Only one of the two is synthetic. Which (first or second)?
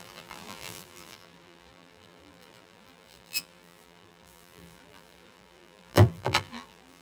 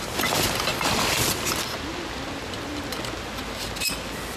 first